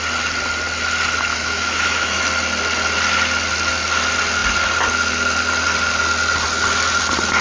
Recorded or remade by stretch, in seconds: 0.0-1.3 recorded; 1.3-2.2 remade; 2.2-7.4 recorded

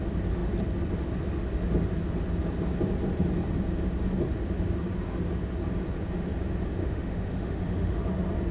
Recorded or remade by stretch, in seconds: 0.0-6.8 recorded; 6.8-8.0 remade; 8.0-8.5 recorded

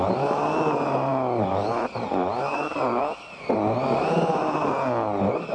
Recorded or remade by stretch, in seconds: 0.0-5.5 recorded

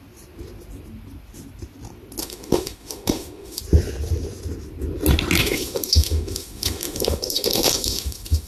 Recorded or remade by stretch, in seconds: 0.0-2.2 recorded; 2.2-3.6 remade; 3.6-5.4 recorded; 5.4-8.5 remade

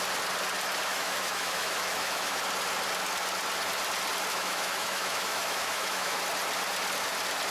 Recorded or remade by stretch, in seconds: 0.0-0.9 recorded; 0.9-2.4 remade; 2.4-4.3 recorded; 4.3-6.2 remade; 6.2-7.5 recorded

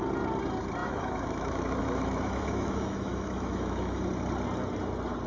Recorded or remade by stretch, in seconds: 0.0-0.8 recorded; 0.8-4.0 remade; 4.0-5.3 recorded

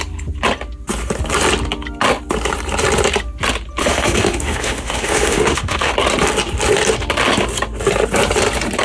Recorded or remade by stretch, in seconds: 0.0-3.8 recorded; 3.8-5.9 remade; 5.9-8.8 recorded